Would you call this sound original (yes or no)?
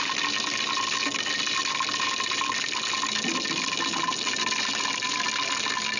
yes